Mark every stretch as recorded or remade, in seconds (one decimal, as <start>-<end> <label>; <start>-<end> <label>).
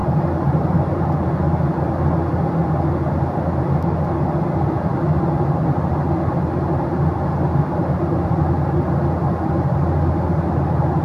0.0-1.0 remade; 1.0-11.0 recorded